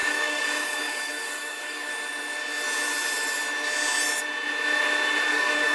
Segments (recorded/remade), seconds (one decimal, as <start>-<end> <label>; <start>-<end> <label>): 0.0-1.9 remade; 1.9-5.3 recorded; 5.3-5.7 remade

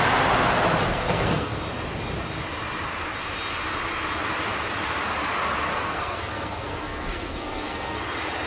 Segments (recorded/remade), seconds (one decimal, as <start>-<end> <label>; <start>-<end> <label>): 0.0-0.9 recorded; 0.9-1.6 remade; 1.6-5.7 recorded; 5.7-8.0 remade; 8.0-8.5 recorded

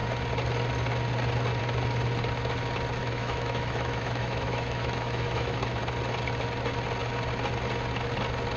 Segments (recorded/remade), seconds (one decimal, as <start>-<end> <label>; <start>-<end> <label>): 0.0-3.0 recorded; 3.0-5.8 remade; 5.8-8.6 recorded

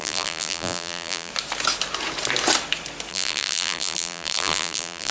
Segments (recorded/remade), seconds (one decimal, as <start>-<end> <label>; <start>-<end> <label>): 0.0-1.3 remade; 1.3-3.1 recorded; 3.1-5.1 remade

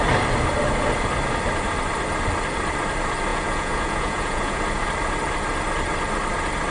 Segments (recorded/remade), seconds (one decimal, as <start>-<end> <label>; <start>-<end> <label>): 0.0-3.3 recorded; 3.3-4.6 remade; 4.6-6.7 recorded

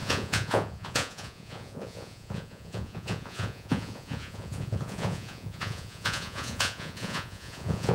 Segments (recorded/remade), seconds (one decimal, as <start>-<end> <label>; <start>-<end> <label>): 0.0-7.9 remade